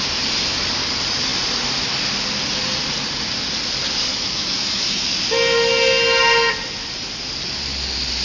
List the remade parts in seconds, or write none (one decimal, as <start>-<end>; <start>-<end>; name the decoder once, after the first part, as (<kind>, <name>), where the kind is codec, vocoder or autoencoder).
4.1-5.0 (autoencoder, DAC-VAE)